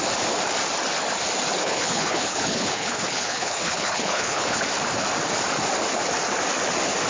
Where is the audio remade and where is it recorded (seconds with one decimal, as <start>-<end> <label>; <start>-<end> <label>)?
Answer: 0.0-1.6 recorded; 1.6-4.6 remade; 4.6-7.1 recorded